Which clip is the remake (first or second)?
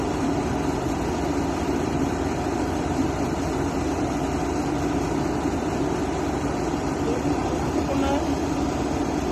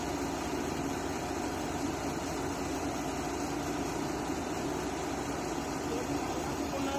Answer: first